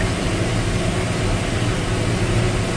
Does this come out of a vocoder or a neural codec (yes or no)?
no